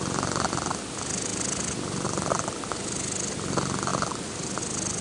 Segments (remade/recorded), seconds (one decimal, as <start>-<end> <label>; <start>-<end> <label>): 0.0-5.0 recorded